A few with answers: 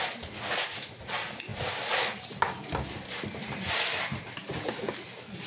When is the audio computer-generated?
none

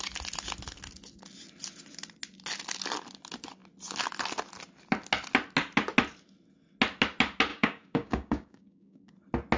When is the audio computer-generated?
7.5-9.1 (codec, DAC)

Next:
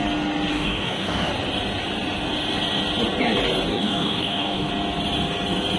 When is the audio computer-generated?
0.5-1.3 (codec, DAC); 3.7-4.7

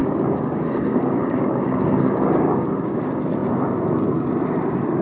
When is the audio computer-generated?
0.0-3.0 (codec, DAC)

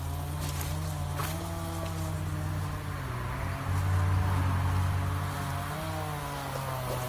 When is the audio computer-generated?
none

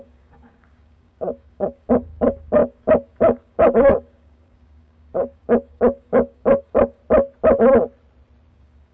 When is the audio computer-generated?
0.0-7.0 (codec, DAC); 8.5-8.9